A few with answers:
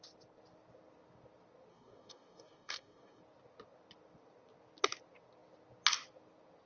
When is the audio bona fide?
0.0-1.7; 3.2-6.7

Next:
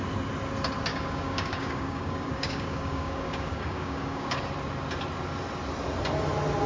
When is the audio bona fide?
0.0-0.9; 4.4-6.7

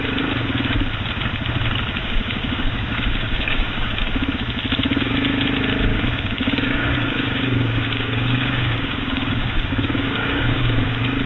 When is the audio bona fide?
0.0-2.0; 4.1-5.9; 10.9-11.3

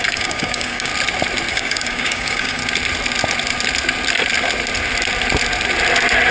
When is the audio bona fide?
0.9-1.5; 2.6-6.3

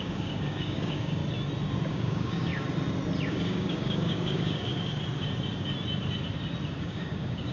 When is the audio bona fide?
1.2-1.9; 2.5-3.3; 4.7-6.8